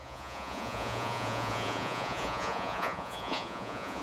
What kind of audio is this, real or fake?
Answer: fake